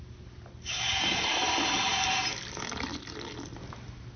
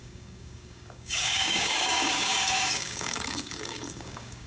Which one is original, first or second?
first